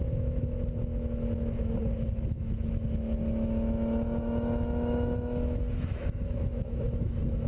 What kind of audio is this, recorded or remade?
remade